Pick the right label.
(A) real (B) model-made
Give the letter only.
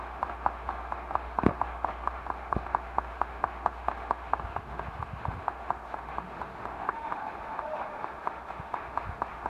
B